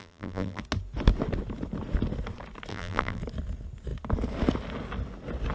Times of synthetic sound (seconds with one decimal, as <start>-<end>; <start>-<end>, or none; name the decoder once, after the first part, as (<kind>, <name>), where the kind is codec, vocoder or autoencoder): 0.0-0.6 (vocoder, BigVGAN v2); 2.7-3.2